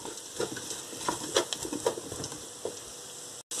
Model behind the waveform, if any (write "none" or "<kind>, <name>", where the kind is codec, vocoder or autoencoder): none